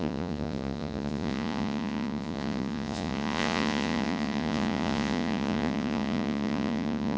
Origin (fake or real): fake